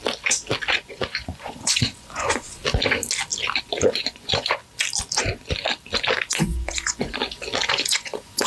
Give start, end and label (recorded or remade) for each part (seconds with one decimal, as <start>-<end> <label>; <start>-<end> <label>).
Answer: 0.0-0.7 recorded; 0.7-2.6 remade; 2.6-3.6 recorded; 3.6-4.6 remade; 4.6-6.3 recorded; 6.3-7.2 remade; 7.2-7.7 recorded; 7.7-8.5 remade